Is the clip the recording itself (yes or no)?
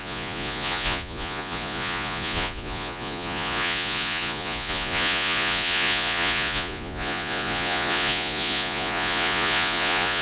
no